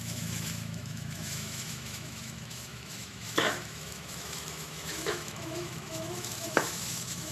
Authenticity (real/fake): fake